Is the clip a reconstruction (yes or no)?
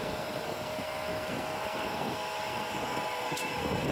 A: yes